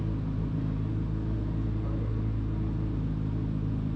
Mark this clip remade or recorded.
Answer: recorded